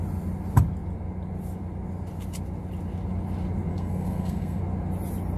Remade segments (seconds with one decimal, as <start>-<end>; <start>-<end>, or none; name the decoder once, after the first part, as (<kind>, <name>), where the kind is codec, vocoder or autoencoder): 3.7-4.6 (codec, SNAC)